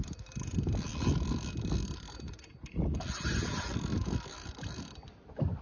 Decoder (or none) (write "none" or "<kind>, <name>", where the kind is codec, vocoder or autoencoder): none